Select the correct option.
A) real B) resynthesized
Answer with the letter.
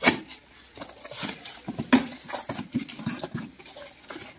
A